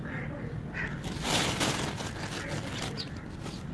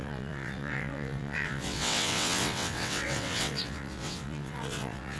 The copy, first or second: second